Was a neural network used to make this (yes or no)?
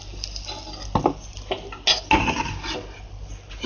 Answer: no